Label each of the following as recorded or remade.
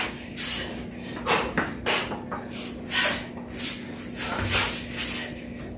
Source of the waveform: recorded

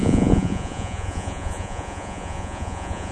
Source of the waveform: remade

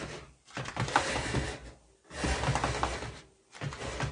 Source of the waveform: recorded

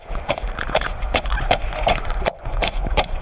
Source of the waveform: remade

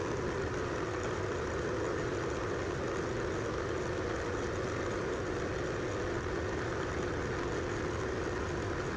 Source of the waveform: recorded